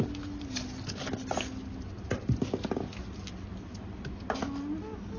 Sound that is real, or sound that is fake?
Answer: real